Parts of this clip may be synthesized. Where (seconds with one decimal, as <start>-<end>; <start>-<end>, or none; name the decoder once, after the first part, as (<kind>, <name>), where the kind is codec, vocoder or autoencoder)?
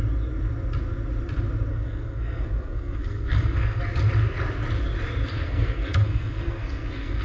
1.7-3.8 (codec, SNAC); 5.3-7.2